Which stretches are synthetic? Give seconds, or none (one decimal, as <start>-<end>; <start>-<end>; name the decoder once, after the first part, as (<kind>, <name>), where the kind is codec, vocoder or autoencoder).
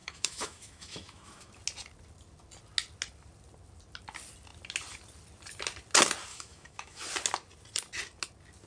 0.0-1.5 (autoencoder, DAC-VAE); 6.3-7.0